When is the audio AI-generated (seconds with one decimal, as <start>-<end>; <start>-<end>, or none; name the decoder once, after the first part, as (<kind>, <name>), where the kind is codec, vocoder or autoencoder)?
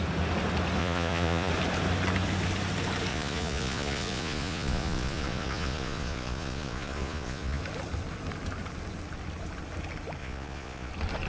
0.8-1.5 (vocoder, Vocos); 3.1-7.6; 10.2-10.9